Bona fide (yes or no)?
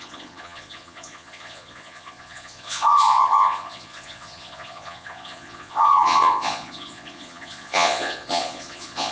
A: no